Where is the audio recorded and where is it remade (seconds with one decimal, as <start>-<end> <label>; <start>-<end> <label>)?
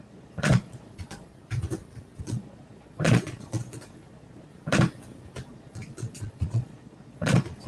0.0-1.3 remade; 1.3-2.2 recorded; 2.2-4.5 remade; 4.5-5.5 recorded; 5.5-7.7 remade